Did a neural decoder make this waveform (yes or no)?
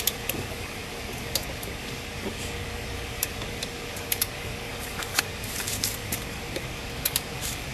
yes